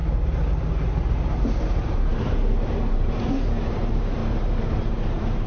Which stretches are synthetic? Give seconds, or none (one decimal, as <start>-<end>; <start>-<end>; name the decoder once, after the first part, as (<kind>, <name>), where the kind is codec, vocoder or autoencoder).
1.4-5.5 (vocoder, BigVGAN v2)